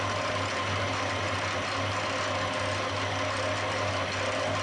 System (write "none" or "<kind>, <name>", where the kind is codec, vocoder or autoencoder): none